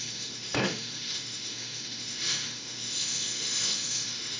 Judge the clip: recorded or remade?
remade